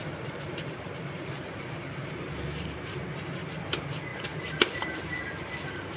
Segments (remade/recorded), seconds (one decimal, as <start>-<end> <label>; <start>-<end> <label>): 0.0-6.0 recorded